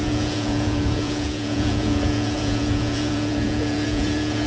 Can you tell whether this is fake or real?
fake